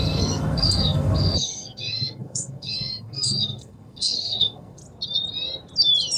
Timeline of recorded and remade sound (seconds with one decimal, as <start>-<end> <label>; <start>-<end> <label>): 0.0-4.8 remade; 4.8-6.2 recorded